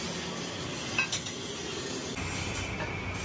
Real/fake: real